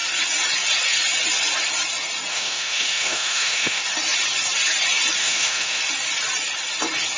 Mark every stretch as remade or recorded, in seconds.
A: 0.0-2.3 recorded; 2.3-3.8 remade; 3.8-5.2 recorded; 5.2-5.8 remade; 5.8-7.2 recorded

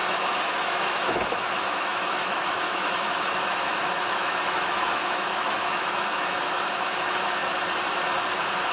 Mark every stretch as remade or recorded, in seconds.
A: 0.0-7.4 remade; 7.4-8.7 recorded

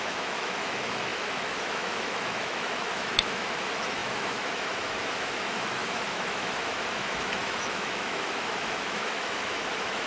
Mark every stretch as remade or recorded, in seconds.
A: 0.0-10.1 remade